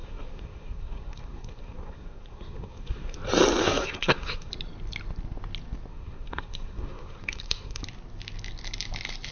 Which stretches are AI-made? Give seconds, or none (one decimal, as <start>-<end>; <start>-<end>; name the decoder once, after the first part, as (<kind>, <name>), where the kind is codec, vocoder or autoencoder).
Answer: 0.0-3.2 (codec, SNAC); 3.6-4.5; 5.9-7.8